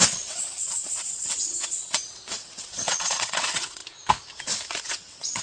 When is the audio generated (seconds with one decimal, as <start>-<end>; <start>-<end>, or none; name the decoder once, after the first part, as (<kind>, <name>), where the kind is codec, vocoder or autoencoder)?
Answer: 0.0-3.8 (vocoder, WaveNeXt); 4.8-5.4